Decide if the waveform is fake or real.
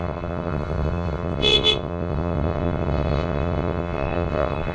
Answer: fake